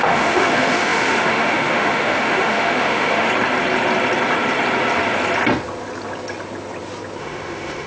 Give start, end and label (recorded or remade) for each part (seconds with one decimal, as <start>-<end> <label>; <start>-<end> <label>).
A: 0.0-3.3 remade; 3.3-7.2 recorded; 7.2-7.9 remade